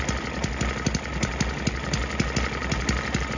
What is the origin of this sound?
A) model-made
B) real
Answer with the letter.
B